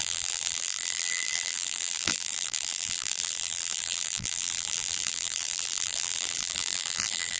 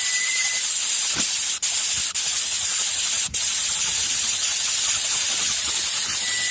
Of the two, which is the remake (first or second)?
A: first